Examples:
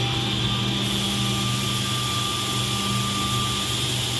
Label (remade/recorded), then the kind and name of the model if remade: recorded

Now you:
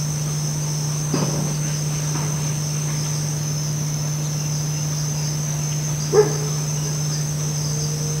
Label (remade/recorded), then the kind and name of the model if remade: recorded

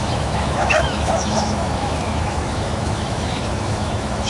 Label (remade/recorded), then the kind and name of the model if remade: remade, autoencoder, DAC-VAE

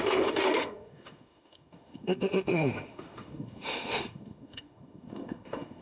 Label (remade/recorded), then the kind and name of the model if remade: remade, autoencoder, DAC-VAE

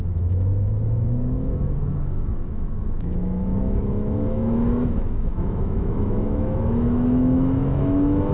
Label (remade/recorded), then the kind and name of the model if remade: remade, autoencoder, DAC-VAE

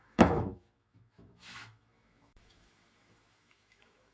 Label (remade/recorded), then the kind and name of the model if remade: remade, autoencoder, DAC-VAE